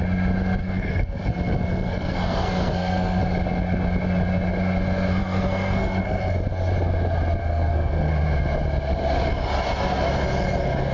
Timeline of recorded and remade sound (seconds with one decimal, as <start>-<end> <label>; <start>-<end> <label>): 0.0-0.6 recorded; 0.6-3.2 remade; 3.2-5.2 recorded; 5.2-6.2 remade; 6.2-7.4 recorded; 7.4-8.1 remade; 8.1-10.9 recorded